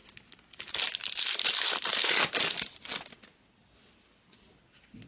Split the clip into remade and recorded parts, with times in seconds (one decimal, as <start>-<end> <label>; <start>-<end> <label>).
0.0-5.1 recorded